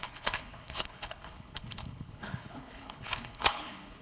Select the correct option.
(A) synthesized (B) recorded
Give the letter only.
A